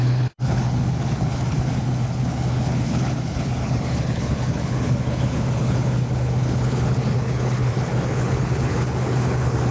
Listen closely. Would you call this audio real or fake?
fake